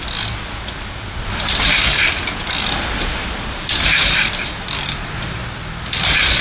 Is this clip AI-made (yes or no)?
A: no